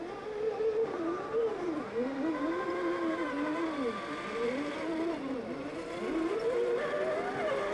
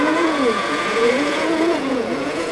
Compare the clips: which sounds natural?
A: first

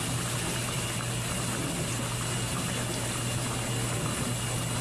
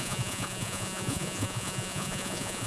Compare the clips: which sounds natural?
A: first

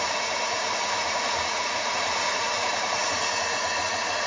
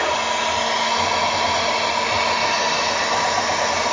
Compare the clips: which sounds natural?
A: second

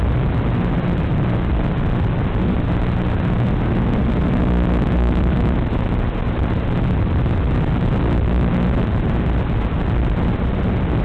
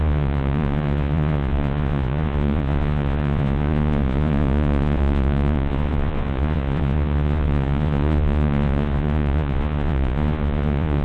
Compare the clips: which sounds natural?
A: first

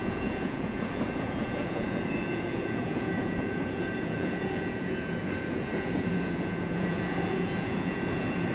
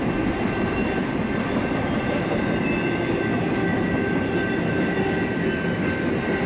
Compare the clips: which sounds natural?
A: second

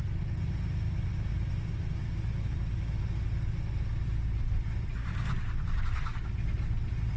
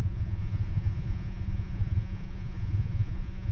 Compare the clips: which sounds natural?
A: first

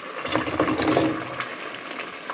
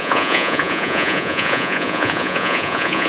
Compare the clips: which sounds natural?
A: first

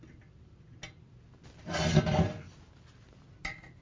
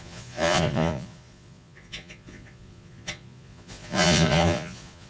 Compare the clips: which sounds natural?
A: first